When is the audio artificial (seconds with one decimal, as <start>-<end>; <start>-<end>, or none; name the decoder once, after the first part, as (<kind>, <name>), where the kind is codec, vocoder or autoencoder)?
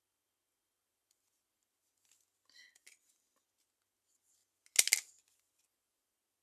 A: none